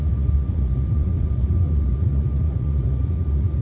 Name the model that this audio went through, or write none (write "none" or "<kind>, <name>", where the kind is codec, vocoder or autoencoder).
vocoder, Vocos